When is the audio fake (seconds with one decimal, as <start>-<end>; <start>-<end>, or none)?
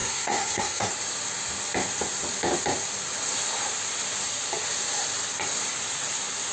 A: 0.0-0.9